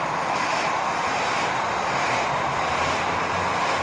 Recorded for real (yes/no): yes